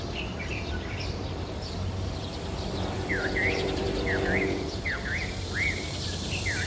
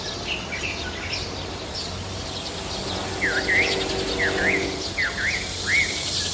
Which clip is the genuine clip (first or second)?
second